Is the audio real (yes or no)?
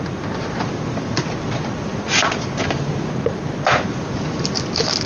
yes